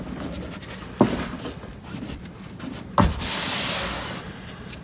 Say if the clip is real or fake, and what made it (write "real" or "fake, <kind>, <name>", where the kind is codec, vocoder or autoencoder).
real